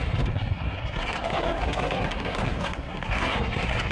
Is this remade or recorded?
remade